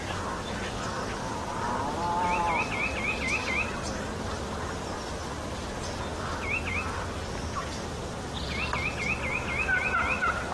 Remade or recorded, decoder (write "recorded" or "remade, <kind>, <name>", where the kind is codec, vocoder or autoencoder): recorded